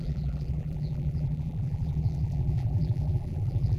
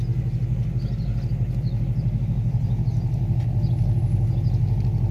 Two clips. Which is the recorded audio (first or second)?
second